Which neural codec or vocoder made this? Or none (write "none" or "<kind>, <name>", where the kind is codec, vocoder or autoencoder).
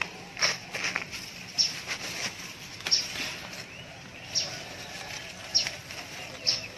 none